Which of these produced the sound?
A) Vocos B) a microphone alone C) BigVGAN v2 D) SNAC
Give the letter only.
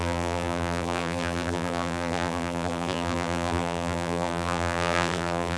C